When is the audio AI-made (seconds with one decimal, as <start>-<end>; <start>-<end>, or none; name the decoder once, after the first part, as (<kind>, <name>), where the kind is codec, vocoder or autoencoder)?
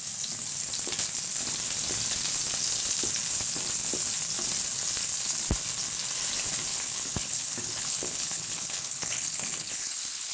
6.7-10.3 (codec, HILCodec)